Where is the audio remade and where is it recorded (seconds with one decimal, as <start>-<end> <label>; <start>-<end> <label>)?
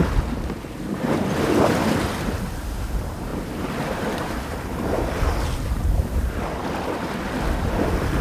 0.0-3.3 recorded; 3.3-6.3 remade; 6.3-8.2 recorded